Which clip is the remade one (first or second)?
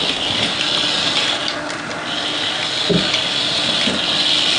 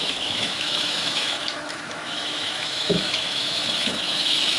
second